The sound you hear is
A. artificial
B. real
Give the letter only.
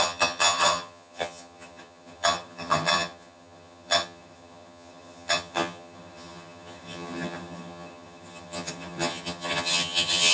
A